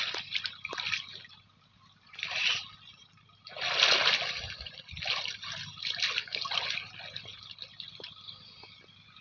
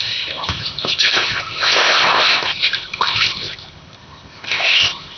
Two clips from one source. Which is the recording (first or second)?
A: first